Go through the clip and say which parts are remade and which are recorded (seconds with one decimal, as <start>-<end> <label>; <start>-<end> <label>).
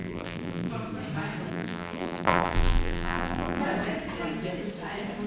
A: 0.0-0.7 remade; 0.7-1.5 recorded; 1.5-3.6 remade; 3.6-5.3 recorded